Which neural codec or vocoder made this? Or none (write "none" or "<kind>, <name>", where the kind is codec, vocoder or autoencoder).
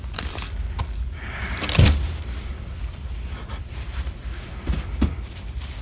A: vocoder, BigVGAN v2